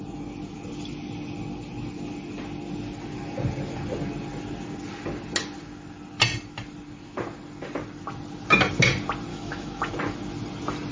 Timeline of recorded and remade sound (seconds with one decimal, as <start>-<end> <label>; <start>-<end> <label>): 0.0-9.3 recorded; 9.3-9.9 remade; 9.9-10.9 recorded